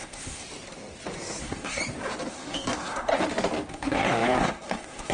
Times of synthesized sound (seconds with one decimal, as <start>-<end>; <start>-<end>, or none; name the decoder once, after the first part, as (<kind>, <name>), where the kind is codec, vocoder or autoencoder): 0.0-0.4 (codec, SNAC); 1.4-1.8; 2.3-3.1; 3.7-5.1